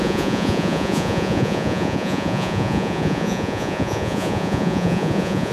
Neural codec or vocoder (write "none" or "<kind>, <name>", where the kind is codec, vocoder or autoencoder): vocoder, Vocos